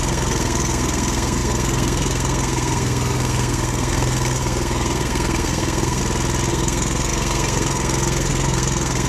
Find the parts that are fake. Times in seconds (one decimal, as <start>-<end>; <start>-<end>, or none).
0.0-6.0; 6.5-9.1